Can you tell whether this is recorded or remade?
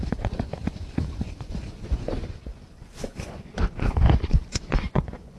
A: remade